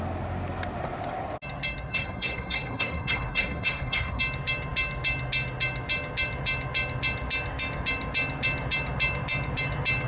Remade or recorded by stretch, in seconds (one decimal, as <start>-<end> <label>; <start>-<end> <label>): 0.0-1.9 recorded; 1.9-4.2 remade; 4.2-10.1 recorded